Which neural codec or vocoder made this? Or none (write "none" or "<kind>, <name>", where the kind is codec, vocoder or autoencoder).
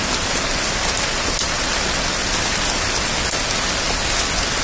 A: none